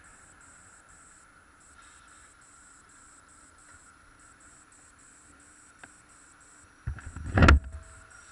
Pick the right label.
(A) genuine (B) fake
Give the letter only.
A